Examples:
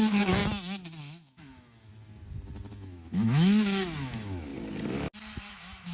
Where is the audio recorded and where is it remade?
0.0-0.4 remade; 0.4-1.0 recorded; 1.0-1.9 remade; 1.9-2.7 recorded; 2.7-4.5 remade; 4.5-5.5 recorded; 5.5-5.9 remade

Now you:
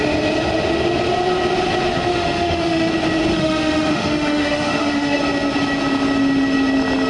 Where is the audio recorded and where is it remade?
0.0-2.1 recorded; 2.1-2.9 remade; 2.9-3.3 recorded; 3.3-5.2 remade; 5.2-7.1 recorded

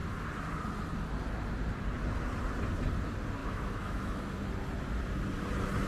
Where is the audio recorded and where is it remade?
0.0-3.4 recorded; 3.4-4.2 remade; 4.2-5.9 recorded

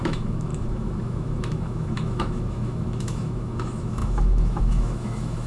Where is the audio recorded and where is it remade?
0.0-5.5 remade

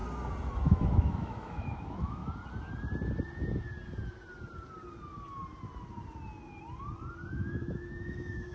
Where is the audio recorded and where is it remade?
0.0-0.6 recorded; 0.6-2.2 remade; 2.2-7.3 recorded; 7.3-8.5 remade

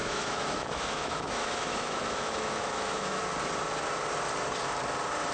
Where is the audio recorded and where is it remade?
0.0-3.2 remade; 3.2-5.3 recorded

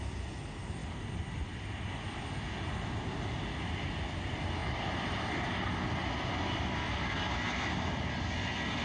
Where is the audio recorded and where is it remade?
0.0-8.8 recorded

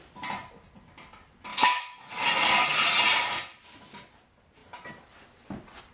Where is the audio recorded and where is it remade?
0.0-1.5 recorded; 1.5-2.1 remade; 2.1-5.9 recorded